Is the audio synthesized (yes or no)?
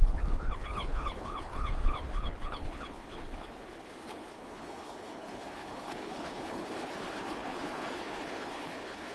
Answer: yes